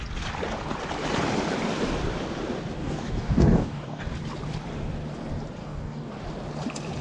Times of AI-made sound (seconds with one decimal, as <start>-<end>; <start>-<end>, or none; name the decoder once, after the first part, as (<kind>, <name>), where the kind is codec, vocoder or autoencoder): 2.8-4.1 (codec, DAC); 5.6-6.1